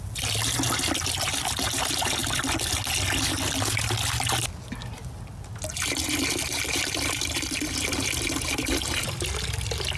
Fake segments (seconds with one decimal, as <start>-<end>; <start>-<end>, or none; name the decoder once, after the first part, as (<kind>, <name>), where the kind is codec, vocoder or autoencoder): none